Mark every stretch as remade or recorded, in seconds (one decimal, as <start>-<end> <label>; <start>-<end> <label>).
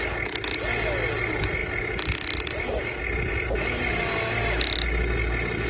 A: 0.0-5.7 recorded